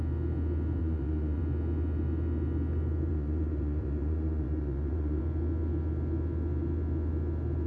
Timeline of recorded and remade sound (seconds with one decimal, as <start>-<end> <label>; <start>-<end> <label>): 0.0-0.8 recorded; 0.8-1.4 remade; 1.4-3.1 recorded; 3.1-5.2 remade; 5.2-7.7 recorded